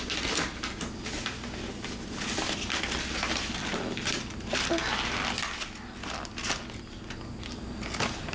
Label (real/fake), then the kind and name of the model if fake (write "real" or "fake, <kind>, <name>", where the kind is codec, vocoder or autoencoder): real